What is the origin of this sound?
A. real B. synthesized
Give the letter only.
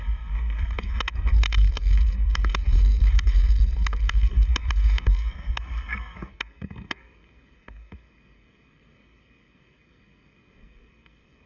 B